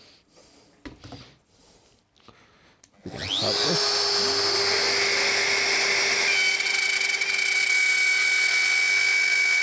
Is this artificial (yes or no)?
no